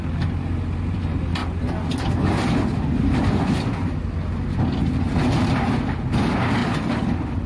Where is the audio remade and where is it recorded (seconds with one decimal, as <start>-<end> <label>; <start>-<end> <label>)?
0.0-6.6 recorded; 6.6-7.5 remade